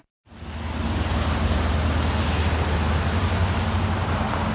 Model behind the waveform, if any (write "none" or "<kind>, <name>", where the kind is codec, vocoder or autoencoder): none